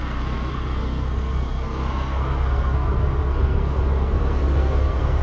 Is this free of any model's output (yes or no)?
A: no